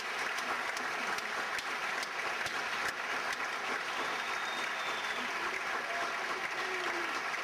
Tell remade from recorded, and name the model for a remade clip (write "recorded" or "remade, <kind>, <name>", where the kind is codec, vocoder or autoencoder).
recorded